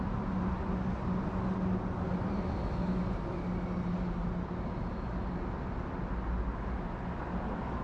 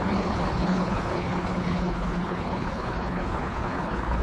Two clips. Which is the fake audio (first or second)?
second